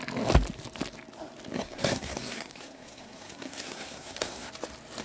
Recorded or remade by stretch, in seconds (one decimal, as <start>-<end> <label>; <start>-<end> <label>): 0.0-1.5 recorded; 1.5-4.5 remade; 4.5-5.0 recorded